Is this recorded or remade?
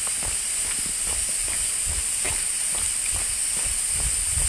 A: recorded